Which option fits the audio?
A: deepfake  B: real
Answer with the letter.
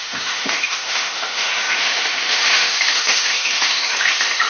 A